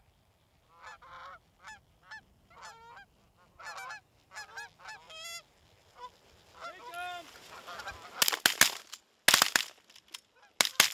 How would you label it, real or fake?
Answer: real